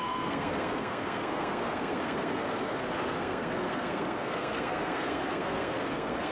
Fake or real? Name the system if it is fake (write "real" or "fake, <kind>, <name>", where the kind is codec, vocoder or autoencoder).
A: fake, codec, SNAC